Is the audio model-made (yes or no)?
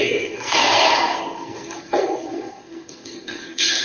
yes